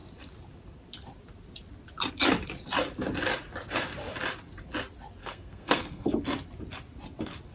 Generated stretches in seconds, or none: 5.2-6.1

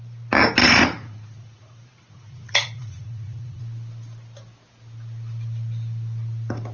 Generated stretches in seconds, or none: 0.6-3.6